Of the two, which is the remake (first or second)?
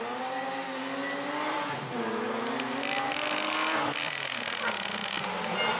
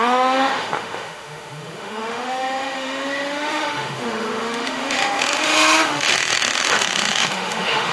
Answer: second